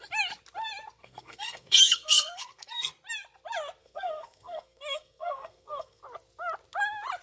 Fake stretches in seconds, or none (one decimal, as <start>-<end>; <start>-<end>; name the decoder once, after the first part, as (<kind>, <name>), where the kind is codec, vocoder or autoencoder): 1.0-2.9 (codec, SNAC); 3.8-6.0